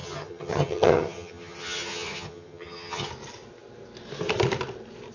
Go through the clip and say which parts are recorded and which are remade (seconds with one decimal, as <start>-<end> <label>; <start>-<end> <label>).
0.0-3.1 remade; 3.1-5.1 recorded